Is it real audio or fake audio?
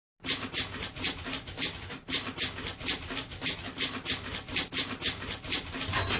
real